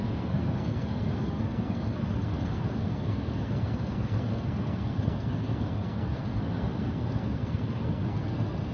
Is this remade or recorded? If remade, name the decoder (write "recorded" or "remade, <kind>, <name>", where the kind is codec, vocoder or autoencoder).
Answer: remade, codec, SNAC